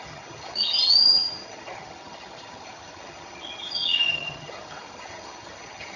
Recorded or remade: remade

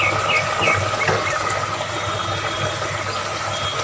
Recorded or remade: recorded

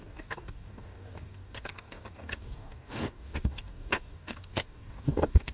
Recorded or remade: remade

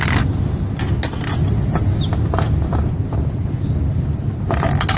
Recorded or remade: recorded